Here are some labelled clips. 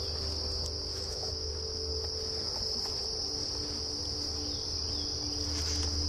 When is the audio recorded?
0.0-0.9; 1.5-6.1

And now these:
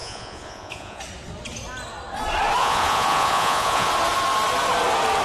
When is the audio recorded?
1.0-2.6; 3.9-5.2

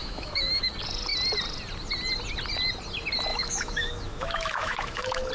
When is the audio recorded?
0.7-3.3

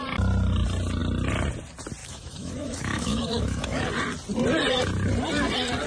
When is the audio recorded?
0.0-2.0; 3.9-5.9

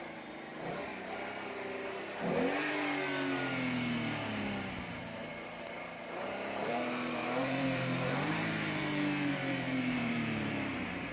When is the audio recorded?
0.9-4.9

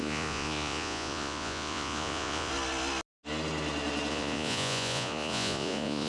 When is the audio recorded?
2.5-4.1